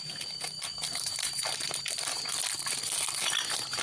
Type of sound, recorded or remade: recorded